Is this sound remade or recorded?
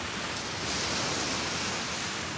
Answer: recorded